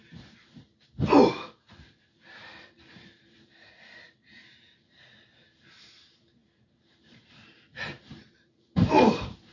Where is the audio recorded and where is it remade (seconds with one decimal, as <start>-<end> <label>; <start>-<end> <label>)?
0.0-2.3 recorded; 2.3-9.5 remade